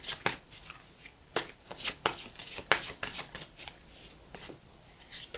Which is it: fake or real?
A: real